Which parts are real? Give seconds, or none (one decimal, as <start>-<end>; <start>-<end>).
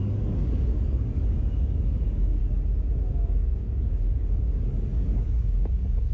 2.4-3.0